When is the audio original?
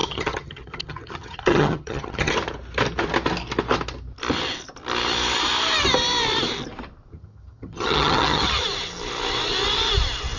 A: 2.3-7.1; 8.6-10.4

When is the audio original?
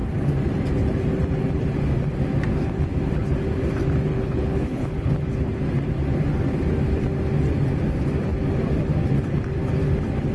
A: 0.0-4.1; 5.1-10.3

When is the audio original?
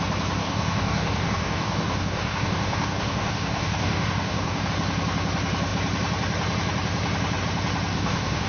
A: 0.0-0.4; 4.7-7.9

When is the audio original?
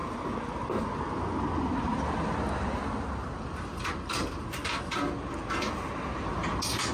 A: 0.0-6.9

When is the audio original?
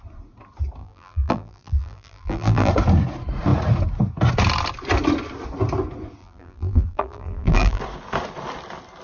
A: 0.0-0.8; 2.7-6.2; 7.8-9.0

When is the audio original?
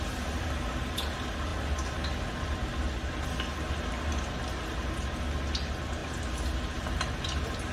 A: 0.0-7.7